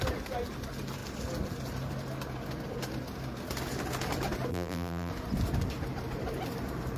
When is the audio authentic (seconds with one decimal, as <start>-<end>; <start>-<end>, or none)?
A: 0.0-4.5; 5.1-7.0